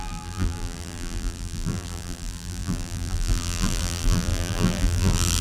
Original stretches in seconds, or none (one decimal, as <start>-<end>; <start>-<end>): none